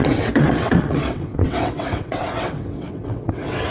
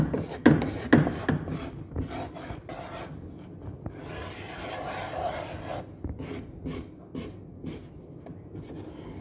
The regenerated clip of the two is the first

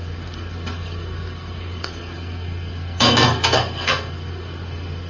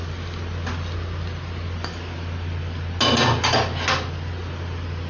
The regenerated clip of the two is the first